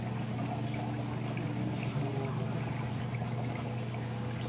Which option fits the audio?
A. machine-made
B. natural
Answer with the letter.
B